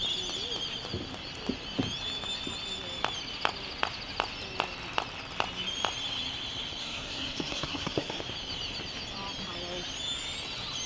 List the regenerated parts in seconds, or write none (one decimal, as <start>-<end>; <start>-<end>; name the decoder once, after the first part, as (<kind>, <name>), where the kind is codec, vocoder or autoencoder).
6.8-8.2 (codec, SNAC)

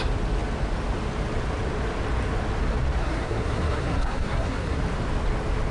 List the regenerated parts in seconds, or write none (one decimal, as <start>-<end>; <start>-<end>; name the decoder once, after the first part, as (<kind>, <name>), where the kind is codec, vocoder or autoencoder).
3.0-4.8 (codec, SNAC)

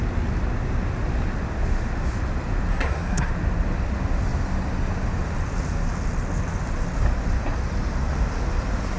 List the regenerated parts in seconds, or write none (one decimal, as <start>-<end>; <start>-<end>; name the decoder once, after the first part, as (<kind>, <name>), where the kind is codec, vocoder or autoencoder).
2.7-3.3 (codec, SNAC)